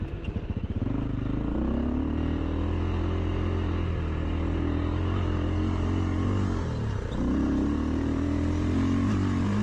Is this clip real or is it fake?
real